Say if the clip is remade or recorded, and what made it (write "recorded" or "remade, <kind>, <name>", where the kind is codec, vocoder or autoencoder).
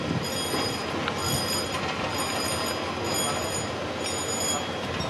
recorded